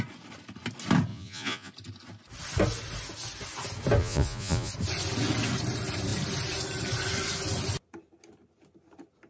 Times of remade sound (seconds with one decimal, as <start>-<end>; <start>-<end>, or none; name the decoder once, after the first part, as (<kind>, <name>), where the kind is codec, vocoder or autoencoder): 1.1-1.7 (vocoder, Vocos); 4.0-4.7